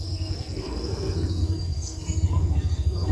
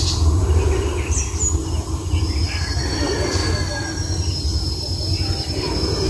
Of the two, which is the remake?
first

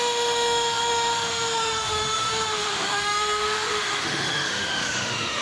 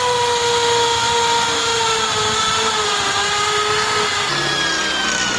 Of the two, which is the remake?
first